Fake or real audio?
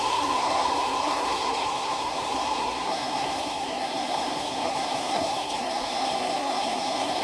fake